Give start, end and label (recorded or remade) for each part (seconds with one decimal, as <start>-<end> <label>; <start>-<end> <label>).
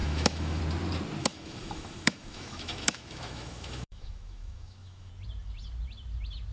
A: 0.0-0.6 remade; 0.6-1.2 recorded; 1.2-5.1 remade; 5.1-6.5 recorded